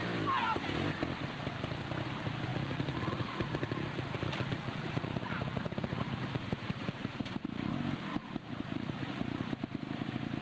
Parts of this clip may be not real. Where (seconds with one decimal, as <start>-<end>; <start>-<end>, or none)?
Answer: 2.5-7.7; 8.1-9.5